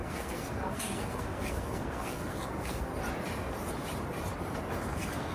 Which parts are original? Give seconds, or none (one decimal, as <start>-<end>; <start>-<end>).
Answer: 2.9-4.7